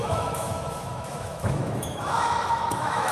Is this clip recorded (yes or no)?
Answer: no